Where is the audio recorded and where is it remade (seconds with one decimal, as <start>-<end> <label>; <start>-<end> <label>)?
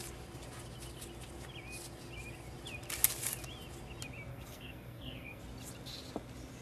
0.0-4.3 recorded; 4.3-5.4 remade; 5.4-6.6 recorded